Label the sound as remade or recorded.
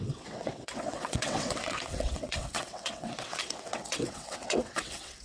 remade